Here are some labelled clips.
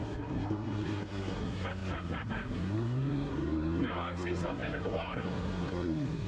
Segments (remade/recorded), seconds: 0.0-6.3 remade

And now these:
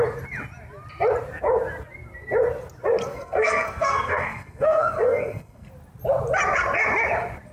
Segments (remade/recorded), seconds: 0.0-3.1 recorded; 3.1-5.7 remade; 5.7-7.5 recorded

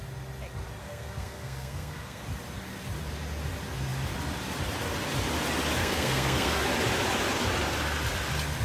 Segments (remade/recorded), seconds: 0.0-0.8 recorded; 0.8-2.2 remade; 2.2-5.8 recorded; 5.8-6.6 remade; 6.6-8.6 recorded

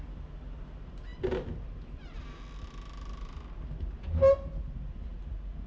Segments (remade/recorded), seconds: 0.0-5.7 recorded

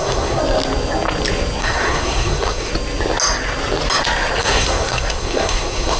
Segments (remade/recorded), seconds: 0.0-0.4 remade; 0.4-1.6 recorded; 1.6-2.7 remade; 2.7-4.4 recorded; 4.4-6.0 remade

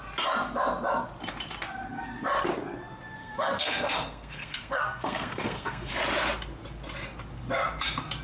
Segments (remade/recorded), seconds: 0.0-3.2 recorded; 3.2-5.9 remade; 5.9-8.2 recorded